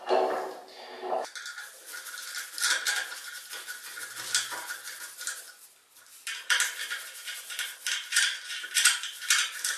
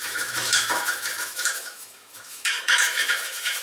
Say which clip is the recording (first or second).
first